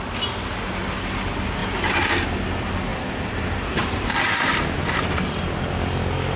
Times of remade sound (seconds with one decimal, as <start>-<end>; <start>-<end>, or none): 2.9-5.4